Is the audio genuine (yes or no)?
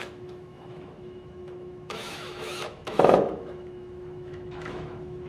no